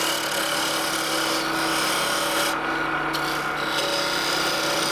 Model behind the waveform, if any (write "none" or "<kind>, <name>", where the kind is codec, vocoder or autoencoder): none